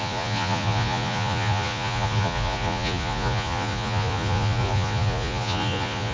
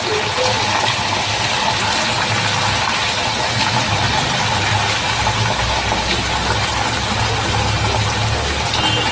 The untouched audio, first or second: second